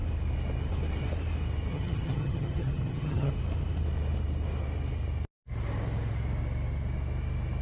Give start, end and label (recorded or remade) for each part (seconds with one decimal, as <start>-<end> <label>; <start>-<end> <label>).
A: 0.0-1.7 recorded; 1.7-3.3 remade; 3.3-7.6 recorded